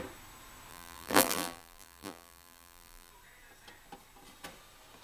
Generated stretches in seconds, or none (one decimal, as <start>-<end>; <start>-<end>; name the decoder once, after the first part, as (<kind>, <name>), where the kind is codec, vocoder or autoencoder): 0.7-3.1 (vocoder, BigVGAN v2)